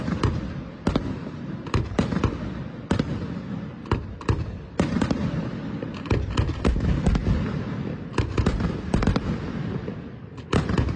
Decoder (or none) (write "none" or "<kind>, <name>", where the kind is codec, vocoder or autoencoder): none